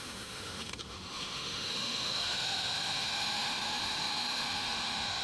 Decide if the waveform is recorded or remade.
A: remade